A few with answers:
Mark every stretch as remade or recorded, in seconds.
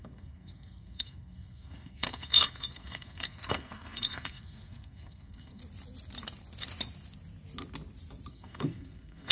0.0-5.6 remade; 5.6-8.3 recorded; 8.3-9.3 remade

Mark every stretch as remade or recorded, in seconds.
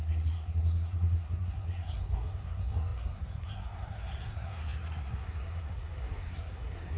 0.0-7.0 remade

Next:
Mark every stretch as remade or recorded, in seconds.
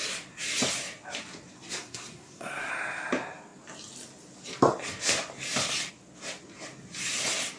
0.0-1.7 recorded; 1.7-2.7 remade; 2.7-7.6 recorded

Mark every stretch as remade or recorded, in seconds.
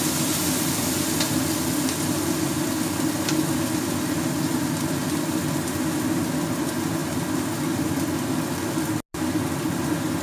0.0-10.2 recorded